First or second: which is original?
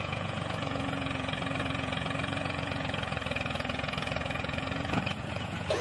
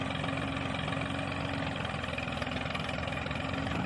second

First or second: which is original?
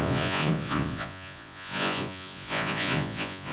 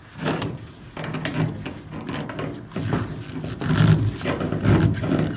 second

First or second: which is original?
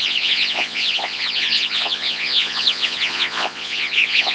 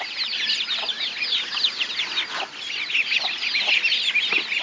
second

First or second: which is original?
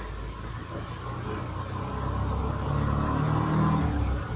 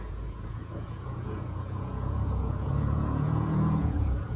first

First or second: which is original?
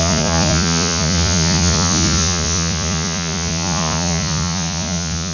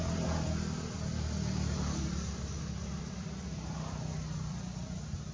second